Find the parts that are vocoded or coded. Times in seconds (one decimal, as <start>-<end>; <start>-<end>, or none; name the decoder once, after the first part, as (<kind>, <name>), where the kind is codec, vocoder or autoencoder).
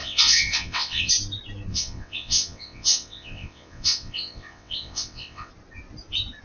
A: 0.0-1.1 (vocoder, WaveNeXt); 1.7-5.5